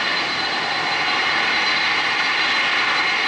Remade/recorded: recorded